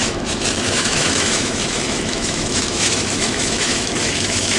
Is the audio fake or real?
fake